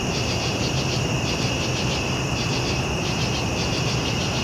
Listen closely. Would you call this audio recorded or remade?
remade